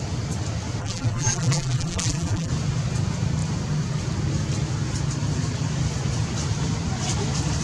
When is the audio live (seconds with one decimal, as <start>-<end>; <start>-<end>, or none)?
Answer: 0.0-0.8; 2.5-7.6